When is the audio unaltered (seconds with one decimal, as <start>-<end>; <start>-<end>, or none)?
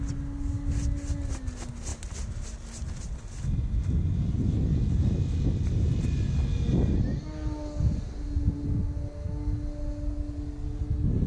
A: 0.0-11.3